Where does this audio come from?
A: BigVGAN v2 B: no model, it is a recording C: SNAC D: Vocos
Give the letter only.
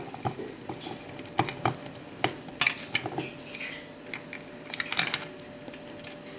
B